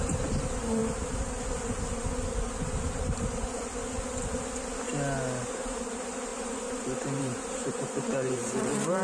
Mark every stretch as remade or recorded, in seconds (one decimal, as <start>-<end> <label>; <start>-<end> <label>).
0.0-0.8 remade; 0.8-5.4 recorded; 5.4-6.3 remade; 6.3-7.0 recorded; 7.0-9.0 remade